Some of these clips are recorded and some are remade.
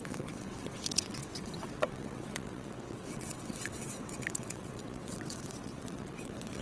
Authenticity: remade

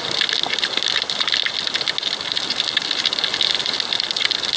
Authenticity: recorded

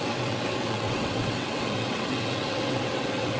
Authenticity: remade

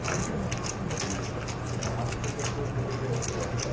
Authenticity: recorded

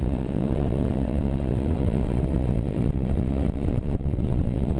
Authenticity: remade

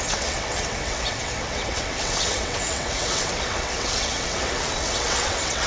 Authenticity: remade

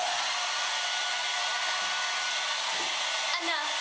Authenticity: recorded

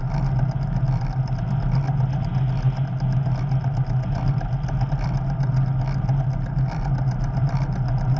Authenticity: recorded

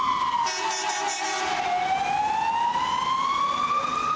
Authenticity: recorded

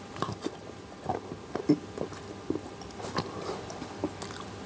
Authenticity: recorded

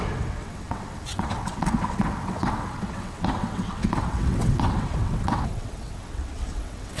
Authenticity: remade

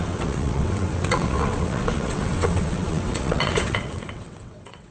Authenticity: remade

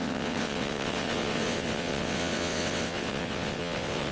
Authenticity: remade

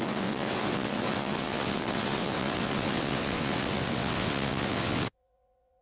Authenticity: remade